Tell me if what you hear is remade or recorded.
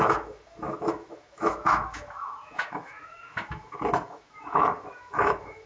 remade